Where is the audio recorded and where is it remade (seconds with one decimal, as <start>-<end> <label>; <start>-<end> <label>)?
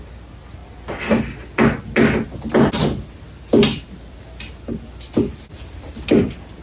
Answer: 0.0-6.6 recorded